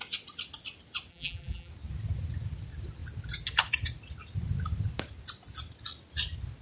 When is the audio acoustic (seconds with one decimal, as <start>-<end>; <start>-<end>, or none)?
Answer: 0.0-1.1; 1.7-6.6